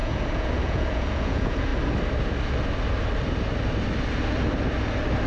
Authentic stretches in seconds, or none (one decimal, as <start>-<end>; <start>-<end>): 1.7-5.3

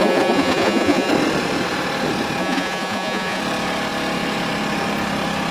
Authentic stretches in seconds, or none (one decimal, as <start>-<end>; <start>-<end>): 1.1-2.4; 3.4-5.5

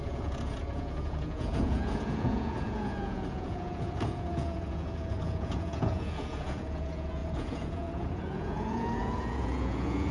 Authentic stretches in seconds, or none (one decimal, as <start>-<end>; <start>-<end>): none

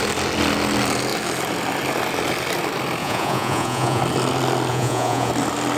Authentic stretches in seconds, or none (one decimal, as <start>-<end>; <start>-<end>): 0.0-3.0; 4.0-4.7; 5.3-5.8

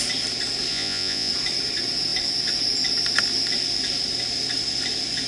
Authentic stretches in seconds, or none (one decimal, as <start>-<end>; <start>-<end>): 0.0-0.7; 1.3-5.3

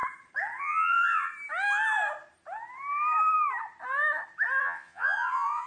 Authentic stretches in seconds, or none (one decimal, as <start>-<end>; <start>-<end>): 0.0-0.6; 1.3-4.6

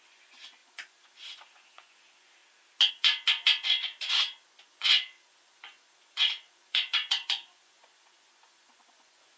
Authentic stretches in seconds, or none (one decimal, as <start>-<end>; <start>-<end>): 2.4-2.9

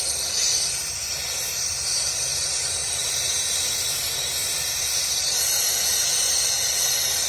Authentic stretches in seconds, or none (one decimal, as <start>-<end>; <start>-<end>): 0.0-7.3